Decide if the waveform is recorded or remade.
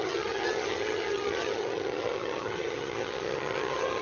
remade